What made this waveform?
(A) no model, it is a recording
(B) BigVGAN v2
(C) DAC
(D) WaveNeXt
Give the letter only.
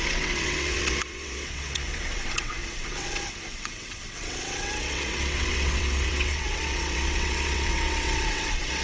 D